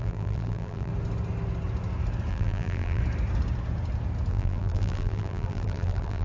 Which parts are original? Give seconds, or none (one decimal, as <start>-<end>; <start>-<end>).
0.9-2.3; 3.0-4.3